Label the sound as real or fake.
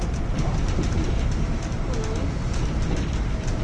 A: real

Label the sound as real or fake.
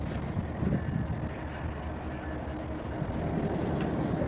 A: real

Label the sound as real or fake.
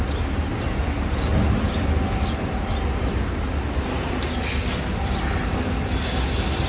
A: real